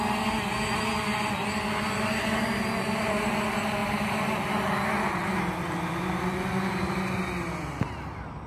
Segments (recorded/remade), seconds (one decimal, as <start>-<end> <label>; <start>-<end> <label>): 0.0-8.5 recorded